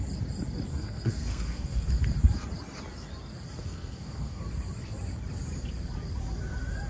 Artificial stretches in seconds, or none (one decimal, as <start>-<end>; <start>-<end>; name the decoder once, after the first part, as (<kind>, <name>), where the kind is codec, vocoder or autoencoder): 0.7-1.9 (codec, SNAC); 3.6-4.4